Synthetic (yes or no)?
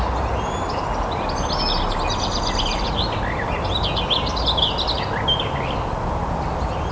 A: no